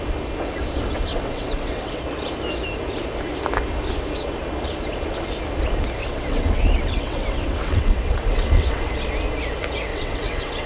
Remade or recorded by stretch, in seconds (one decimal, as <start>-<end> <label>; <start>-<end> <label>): 0.0-1.1 recorded; 1.1-2.0 remade; 2.0-6.0 recorded; 6.0-8.9 remade; 8.9-9.9 recorded; 9.9-10.7 remade